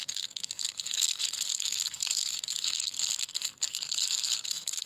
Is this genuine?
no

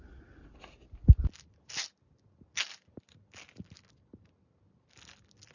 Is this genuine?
yes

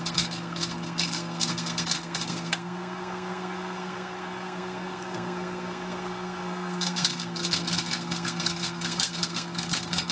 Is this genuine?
no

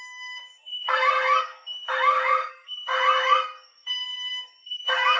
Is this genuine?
no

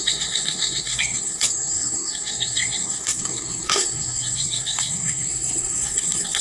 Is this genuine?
no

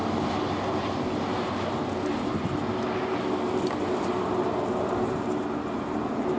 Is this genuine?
yes